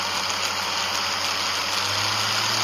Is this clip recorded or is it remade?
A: recorded